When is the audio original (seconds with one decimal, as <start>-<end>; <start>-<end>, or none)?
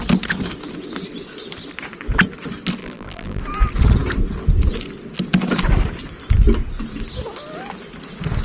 0.0-2.8; 3.4-8.4